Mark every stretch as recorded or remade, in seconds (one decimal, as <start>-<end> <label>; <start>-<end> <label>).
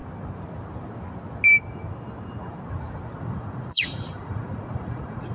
0.0-3.2 recorded; 3.2-5.3 remade